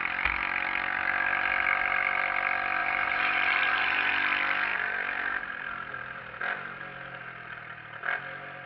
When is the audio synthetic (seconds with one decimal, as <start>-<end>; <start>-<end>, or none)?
2.8-4.1; 4.7-6.2